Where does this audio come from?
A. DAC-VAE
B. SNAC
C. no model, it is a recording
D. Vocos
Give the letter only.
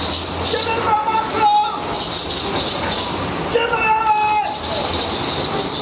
C